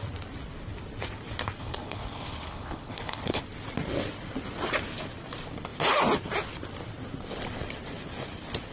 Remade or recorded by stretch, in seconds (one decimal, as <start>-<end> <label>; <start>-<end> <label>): 0.0-1.6 recorded; 1.6-3.4 remade; 3.4-8.7 recorded